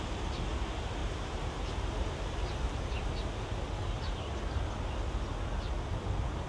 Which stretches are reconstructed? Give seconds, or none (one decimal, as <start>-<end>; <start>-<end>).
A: 1.0-4.9